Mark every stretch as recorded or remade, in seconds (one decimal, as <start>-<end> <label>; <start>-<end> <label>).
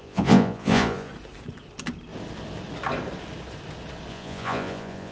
0.0-1.1 remade; 1.1-4.1 recorded; 4.1-5.1 remade